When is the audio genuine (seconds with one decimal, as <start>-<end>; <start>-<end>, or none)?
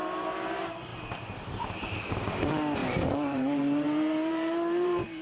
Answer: 0.0-2.8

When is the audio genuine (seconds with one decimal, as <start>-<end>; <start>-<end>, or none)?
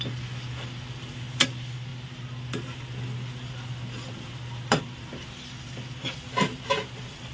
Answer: 0.0-7.3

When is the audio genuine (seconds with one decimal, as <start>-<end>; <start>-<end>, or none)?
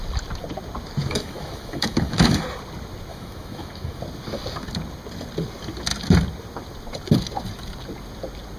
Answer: 0.0-1.0; 2.4-3.1; 4.0-8.6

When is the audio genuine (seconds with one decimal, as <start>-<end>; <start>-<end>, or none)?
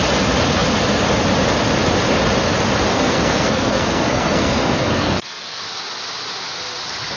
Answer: 0.0-2.9; 5.6-7.2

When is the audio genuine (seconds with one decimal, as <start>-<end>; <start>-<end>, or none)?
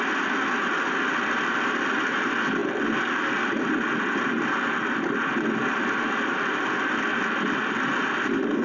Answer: 0.0-8.6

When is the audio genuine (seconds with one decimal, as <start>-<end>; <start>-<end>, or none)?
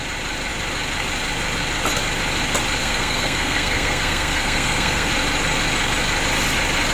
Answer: 0.0-2.8; 5.1-6.9